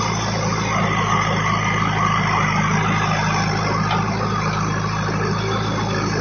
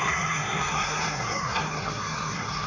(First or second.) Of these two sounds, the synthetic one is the second